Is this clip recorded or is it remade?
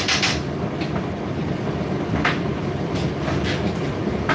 recorded